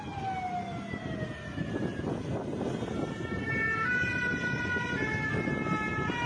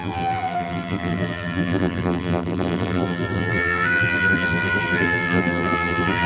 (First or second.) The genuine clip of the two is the first